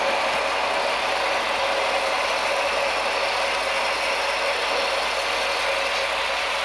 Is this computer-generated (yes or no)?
no